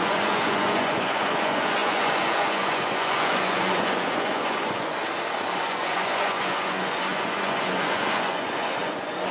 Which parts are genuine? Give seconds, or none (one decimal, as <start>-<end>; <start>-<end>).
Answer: 5.0-5.6